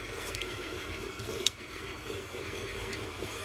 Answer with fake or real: fake